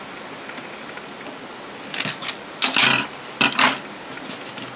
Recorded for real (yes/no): yes